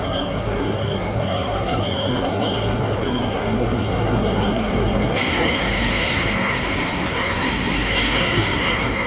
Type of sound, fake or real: fake